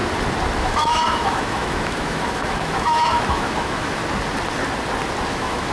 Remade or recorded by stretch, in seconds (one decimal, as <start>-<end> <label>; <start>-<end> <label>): 0.0-0.6 recorded; 0.6-4.0 remade; 4.0-5.3 recorded; 5.3-5.7 remade